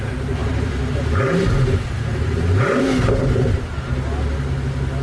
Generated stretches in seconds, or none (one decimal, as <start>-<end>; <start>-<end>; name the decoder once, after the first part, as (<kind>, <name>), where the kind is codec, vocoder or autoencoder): 0.4-2.8 (vocoder, BigVGAN v2); 3.2-4.2